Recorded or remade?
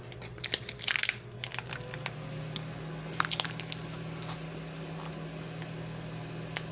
recorded